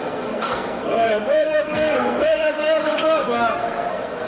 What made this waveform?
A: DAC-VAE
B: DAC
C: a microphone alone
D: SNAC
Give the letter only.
D